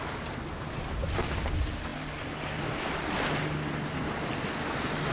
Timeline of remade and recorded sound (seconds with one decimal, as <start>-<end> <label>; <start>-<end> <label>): 0.0-5.1 recorded